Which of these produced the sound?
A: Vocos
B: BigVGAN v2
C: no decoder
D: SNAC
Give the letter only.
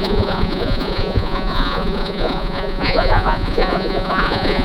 A